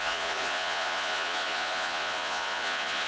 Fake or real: fake